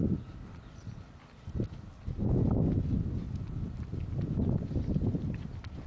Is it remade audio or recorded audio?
recorded